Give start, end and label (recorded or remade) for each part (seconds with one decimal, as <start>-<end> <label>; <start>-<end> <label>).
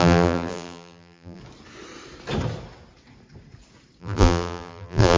0.0-1.4 remade; 1.4-4.0 recorded; 4.0-5.2 remade